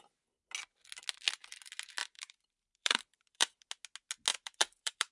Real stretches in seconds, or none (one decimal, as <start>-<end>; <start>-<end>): 0.0-2.0; 3.7-4.3